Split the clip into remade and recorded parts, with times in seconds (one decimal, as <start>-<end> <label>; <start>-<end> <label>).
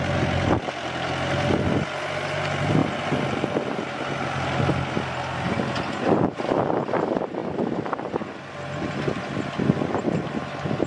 0.0-10.9 recorded